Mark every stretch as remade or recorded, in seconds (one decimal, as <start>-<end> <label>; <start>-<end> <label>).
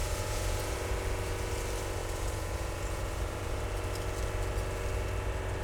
0.0-0.6 remade; 0.6-2.0 recorded; 2.0-3.1 remade; 3.1-5.6 recorded